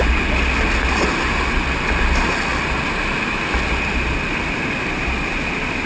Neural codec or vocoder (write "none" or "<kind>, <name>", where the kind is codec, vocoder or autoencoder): none